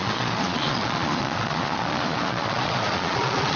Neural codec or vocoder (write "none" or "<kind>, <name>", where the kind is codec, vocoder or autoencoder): vocoder, Vocos